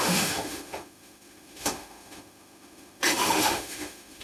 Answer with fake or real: fake